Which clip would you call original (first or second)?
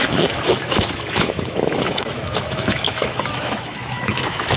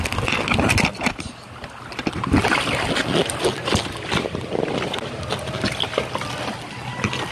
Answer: second